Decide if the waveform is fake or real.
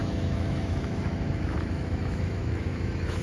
fake